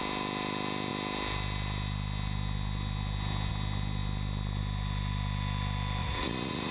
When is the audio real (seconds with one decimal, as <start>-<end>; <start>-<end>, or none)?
0.0-6.0